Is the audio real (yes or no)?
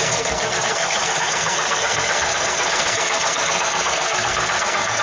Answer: no